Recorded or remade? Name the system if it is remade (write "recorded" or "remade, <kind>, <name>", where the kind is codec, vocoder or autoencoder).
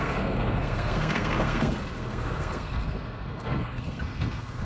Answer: remade, codec, SNAC